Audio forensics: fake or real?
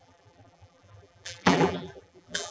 fake